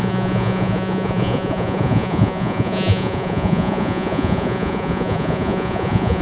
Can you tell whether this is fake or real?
fake